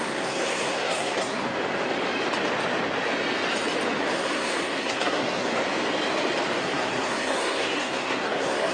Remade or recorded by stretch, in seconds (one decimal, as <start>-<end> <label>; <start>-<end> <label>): 0.0-1.4 remade; 1.4-4.0 recorded; 4.0-5.6 remade; 5.6-6.6 recorded; 6.6-8.7 remade

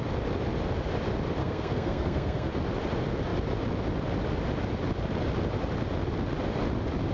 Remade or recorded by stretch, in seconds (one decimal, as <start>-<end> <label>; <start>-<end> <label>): 0.0-1.4 recorded; 1.4-2.5 remade; 2.5-7.1 recorded

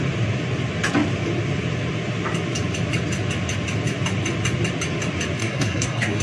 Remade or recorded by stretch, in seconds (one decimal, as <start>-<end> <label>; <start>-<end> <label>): 0.0-5.4 recorded; 5.4-6.2 remade

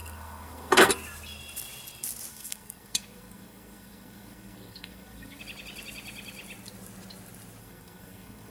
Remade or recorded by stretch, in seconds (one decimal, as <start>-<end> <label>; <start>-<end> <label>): 0.0-0.9 remade; 0.9-2.3 recorded; 2.3-5.4 remade; 5.4-7.6 recorded; 7.6-8.5 remade

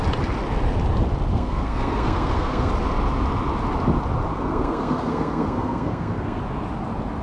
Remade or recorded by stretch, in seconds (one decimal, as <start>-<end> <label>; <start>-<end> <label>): 0.0-1.3 recorded; 1.3-2.7 remade; 2.7-4.3 recorded; 4.3-6.4 remade; 6.4-7.2 recorded

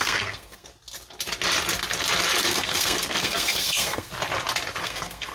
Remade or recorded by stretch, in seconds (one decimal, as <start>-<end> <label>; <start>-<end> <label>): 0.0-0.7 remade; 0.7-2.4 recorded; 2.4-4.1 remade; 4.1-4.8 recorded; 4.8-5.3 remade

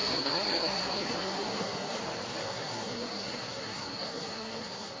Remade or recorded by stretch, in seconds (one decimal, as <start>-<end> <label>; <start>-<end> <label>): 0.0-2.0 remade; 2.0-2.4 recorded; 2.4-5.0 remade